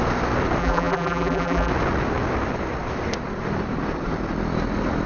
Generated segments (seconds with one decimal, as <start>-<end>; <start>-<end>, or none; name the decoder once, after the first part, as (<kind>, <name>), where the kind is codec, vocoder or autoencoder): 0.6-1.7 (vocoder, BigVGAN v2)